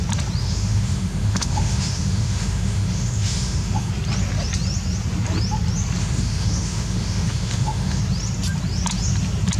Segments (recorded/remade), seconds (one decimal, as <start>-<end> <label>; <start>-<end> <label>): 0.0-0.4 recorded; 0.4-3.9 remade; 3.9-6.0 recorded; 6.0-8.0 remade; 8.0-9.6 recorded